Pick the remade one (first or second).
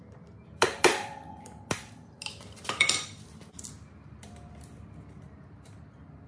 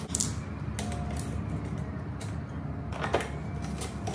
first